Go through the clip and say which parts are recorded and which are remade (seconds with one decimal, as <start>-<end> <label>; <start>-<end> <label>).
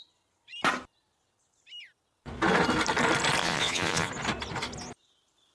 0.0-3.4 recorded; 3.4-4.1 remade; 4.1-5.5 recorded